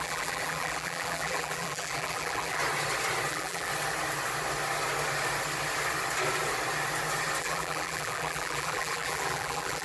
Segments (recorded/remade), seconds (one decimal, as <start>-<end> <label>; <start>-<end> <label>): 0.0-2.6 remade; 2.6-3.3 recorded; 3.3-3.7 remade; 3.7-7.4 recorded; 7.4-9.8 remade